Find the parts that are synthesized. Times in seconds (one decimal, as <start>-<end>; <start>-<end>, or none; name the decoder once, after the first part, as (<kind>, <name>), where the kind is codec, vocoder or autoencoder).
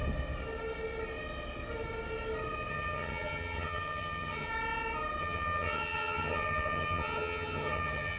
2.7-4.5 (vocoder, HiFi-GAN); 5.2-8.2